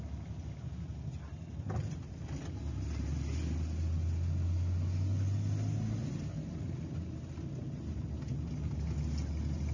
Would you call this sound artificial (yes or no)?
no